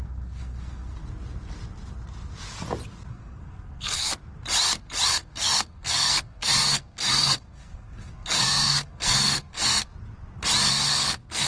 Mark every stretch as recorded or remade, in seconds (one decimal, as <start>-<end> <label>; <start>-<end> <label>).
0.0-1.0 remade; 1.0-3.1 recorded; 3.1-4.1 remade; 4.1-5.1 recorded; 5.1-9.9 remade; 9.9-10.7 recorded; 10.7-11.5 remade